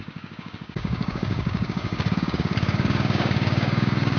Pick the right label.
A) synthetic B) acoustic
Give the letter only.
A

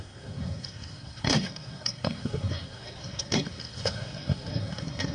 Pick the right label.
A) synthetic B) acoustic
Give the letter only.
A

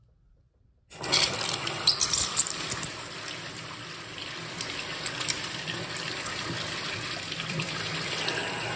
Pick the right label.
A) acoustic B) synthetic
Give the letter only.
B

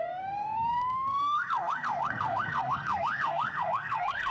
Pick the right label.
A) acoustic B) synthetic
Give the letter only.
B